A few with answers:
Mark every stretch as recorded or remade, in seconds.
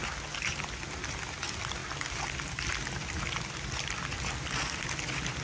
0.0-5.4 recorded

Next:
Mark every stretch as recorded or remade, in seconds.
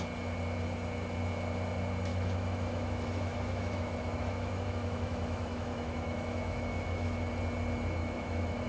0.0-2.1 recorded; 2.1-7.3 remade; 7.3-8.0 recorded; 8.0-8.7 remade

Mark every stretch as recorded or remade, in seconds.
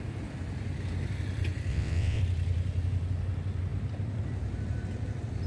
0.0-1.7 recorded; 1.7-2.2 remade; 2.2-5.5 recorded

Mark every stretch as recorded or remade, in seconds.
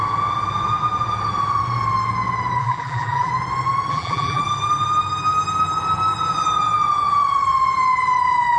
0.0-2.6 recorded; 2.6-3.3 remade; 3.3-3.9 recorded; 3.9-4.4 remade; 4.4-8.6 recorded